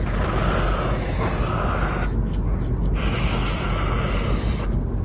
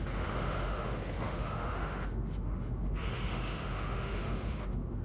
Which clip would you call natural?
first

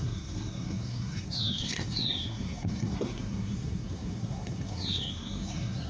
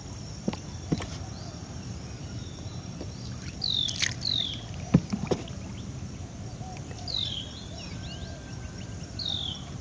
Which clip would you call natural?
second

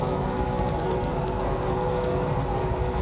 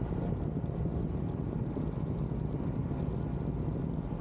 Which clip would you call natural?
second